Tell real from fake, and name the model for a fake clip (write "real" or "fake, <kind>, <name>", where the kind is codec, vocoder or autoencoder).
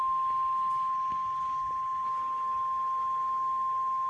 real